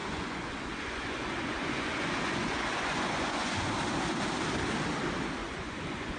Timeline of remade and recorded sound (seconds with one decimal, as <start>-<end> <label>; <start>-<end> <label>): 0.0-3.7 remade; 3.7-5.4 recorded; 5.4-6.2 remade